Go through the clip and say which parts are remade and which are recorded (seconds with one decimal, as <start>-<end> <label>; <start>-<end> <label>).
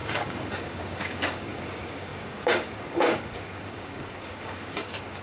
0.0-5.2 remade